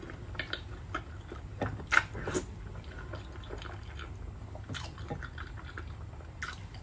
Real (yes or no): yes